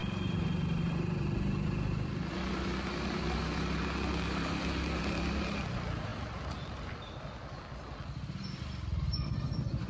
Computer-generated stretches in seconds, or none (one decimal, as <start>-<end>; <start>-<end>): none